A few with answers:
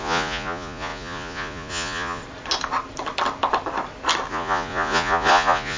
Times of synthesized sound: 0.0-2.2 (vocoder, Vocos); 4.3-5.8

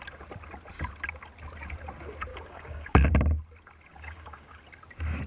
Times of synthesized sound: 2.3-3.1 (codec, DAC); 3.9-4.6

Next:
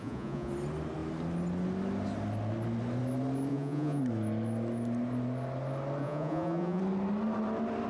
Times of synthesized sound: 0.0-0.5 (vocoder, Vocos); 3.5-4.0; 6.0-6.8